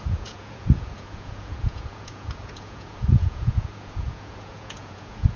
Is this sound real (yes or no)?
no